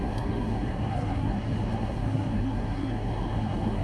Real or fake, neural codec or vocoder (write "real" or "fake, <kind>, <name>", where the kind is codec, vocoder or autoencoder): fake, codec, SNAC